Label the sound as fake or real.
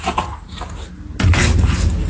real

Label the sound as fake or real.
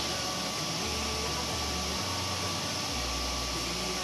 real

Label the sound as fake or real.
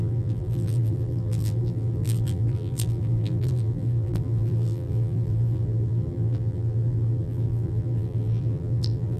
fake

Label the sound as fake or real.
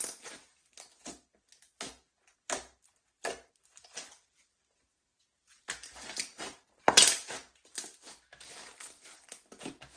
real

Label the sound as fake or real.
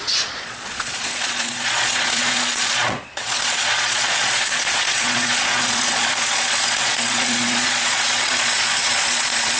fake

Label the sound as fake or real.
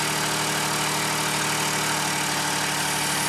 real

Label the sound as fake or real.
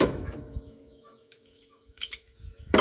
fake